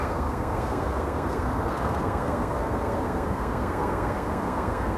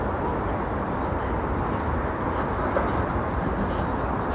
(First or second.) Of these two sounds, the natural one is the second